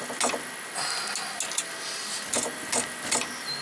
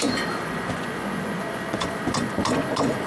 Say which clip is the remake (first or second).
second